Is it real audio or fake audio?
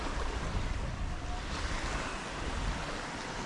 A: real